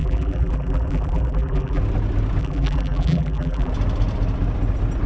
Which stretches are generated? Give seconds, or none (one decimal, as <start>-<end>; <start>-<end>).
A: 0.0-1.8; 2.4-3.7